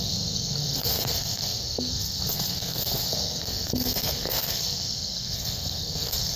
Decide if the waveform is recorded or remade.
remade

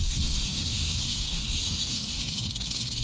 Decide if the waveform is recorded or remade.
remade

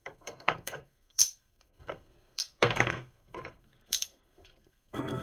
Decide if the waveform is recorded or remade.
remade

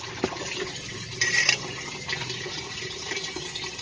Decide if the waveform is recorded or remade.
recorded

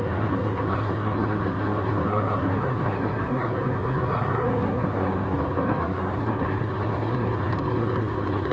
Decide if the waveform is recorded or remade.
remade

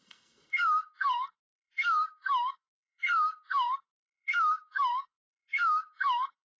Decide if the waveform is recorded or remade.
remade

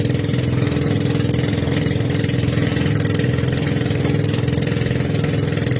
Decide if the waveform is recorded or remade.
recorded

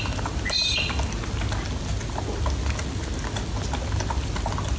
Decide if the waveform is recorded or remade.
recorded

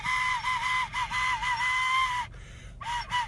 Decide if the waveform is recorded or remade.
recorded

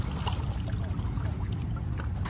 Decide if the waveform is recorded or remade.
recorded